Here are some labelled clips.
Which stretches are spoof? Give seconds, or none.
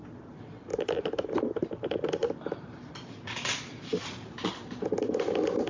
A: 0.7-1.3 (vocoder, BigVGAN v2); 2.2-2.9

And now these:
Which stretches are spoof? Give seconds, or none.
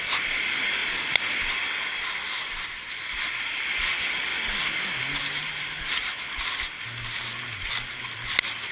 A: none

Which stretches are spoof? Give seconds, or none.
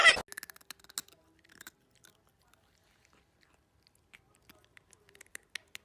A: none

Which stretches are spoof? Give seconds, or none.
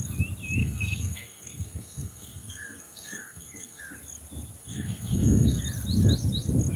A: 0.6-3.8 (codec, SNAC); 4.6-5.6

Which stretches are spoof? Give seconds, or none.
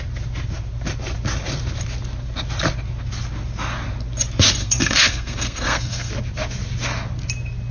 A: 4.6-6.1 (codec, SNAC)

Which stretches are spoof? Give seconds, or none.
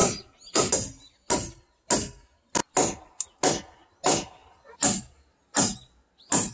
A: none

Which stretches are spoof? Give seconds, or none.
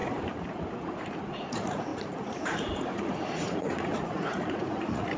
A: 0.0-5.2 (vocoder, Vocos)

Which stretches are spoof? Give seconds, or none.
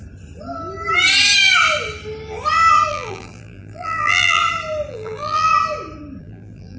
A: 2.9-4.4 (vocoder, BigVGAN v2); 4.9-5.5; 6.2-6.8